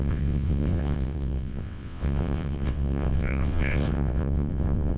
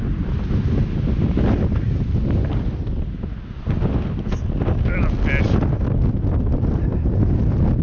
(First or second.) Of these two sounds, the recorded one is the second